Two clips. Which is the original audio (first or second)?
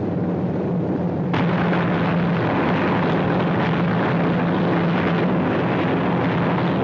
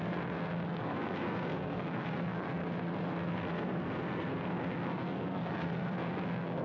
first